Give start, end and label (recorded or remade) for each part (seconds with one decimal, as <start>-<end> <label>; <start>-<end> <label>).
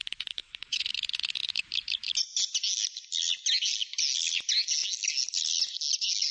0.0-0.4 recorded; 0.4-0.9 remade; 0.9-6.3 recorded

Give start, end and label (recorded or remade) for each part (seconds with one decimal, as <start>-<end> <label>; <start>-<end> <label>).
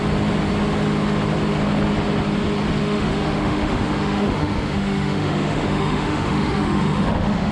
0.0-2.8 recorded; 2.8-7.5 remade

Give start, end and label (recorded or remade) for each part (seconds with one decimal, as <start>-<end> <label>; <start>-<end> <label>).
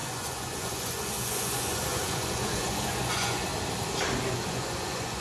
0.0-3.5 remade; 3.5-4.3 recorded; 4.3-5.2 remade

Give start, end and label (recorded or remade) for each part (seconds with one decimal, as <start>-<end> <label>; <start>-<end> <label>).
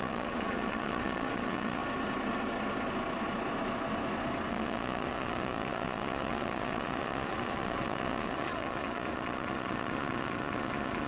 0.0-1.8 remade; 1.8-4.5 recorded; 4.5-11.1 remade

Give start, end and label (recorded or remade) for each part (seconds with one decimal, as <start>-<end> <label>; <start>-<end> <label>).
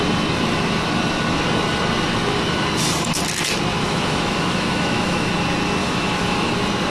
0.0-3.8 recorded; 3.8-5.3 remade; 5.3-5.8 recorded; 5.8-6.5 remade; 6.5-6.9 recorded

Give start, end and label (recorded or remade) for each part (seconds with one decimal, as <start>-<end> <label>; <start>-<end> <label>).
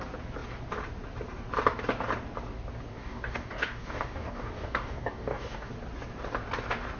0.0-2.9 recorded; 2.9-5.7 remade; 5.7-7.0 recorded